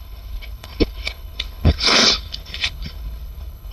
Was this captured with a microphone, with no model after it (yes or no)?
no